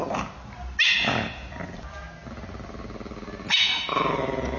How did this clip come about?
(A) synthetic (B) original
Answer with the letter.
B